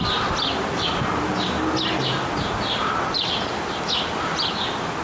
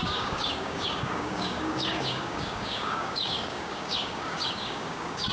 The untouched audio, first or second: first